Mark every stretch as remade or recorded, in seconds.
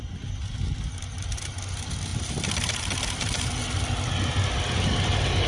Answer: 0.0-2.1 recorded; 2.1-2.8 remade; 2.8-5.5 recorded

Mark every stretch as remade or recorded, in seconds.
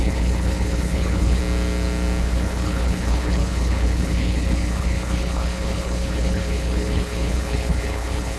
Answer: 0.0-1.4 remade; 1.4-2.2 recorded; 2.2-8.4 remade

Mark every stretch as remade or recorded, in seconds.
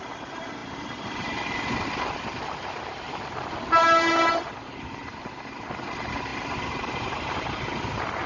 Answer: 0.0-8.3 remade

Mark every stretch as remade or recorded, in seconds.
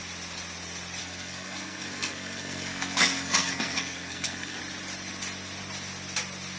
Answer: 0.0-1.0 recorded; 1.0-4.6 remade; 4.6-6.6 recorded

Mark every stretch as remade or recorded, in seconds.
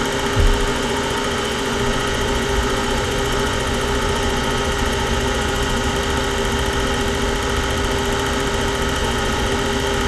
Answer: 0.0-0.7 recorded; 0.7-5.9 remade; 5.9-9.0 recorded; 9.0-9.5 remade; 9.5-10.1 recorded